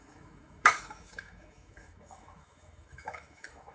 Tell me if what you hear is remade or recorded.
remade